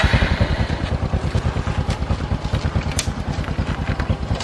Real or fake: real